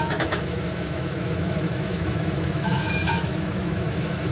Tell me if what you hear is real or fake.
fake